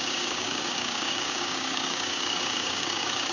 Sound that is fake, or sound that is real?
fake